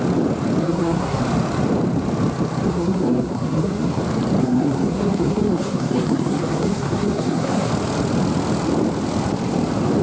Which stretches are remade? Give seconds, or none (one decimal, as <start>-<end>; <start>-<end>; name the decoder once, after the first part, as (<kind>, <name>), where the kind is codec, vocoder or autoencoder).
0.6-1.2 (codec, SNAC); 2.7-4.0; 4.4-7.7